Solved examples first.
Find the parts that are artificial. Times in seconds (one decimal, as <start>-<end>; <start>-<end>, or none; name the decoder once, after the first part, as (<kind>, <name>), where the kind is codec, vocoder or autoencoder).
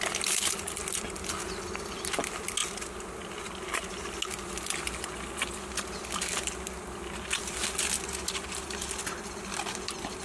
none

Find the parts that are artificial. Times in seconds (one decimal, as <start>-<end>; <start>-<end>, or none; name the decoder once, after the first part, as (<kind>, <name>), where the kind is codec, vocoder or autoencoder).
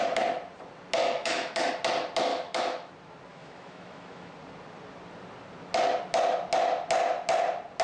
1.0-1.7 (autoencoder, DAC-VAE); 2.3-2.9; 3.3-4.3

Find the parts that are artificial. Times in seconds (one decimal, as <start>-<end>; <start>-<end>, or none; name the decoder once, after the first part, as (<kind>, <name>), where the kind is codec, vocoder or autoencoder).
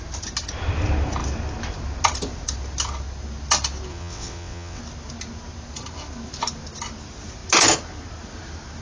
3.9-4.8 (vocoder, WaveNeXt)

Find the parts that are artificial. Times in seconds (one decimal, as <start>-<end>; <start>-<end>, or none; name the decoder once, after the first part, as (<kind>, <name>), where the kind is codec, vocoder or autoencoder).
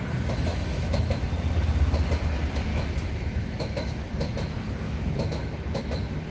0.5-1.3 (autoencoder, DAC-VAE); 2.7-5.3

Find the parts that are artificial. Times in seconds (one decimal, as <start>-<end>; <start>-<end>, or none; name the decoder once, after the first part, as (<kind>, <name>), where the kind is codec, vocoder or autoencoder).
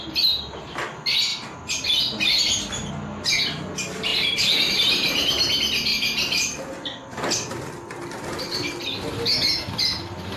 1.3-2.9 (vocoder, BigVGAN v2); 4.1-4.7; 5.9-9.2